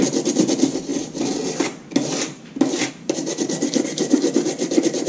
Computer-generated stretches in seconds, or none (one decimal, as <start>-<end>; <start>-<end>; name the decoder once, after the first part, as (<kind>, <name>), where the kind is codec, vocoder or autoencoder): 0.0-0.9 (vocoder, BigVGAN v2); 2.9-5.1